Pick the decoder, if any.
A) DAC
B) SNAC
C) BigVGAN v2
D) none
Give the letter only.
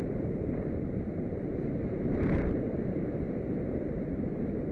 C